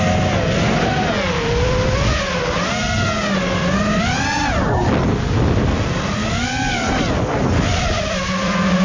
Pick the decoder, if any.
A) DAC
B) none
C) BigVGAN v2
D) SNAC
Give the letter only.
B